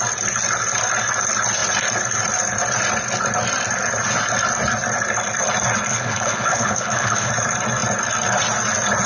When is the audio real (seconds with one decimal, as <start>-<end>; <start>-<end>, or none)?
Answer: 0.0-5.9; 7.3-9.1